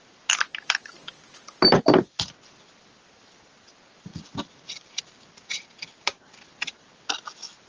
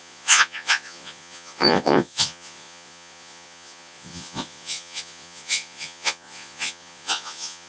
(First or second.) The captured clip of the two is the first